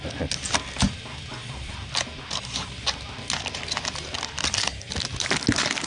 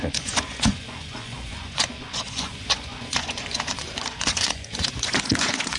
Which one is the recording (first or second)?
first